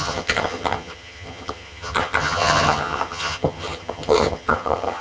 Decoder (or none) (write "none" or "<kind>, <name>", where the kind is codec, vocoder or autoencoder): vocoder, HiFi-GAN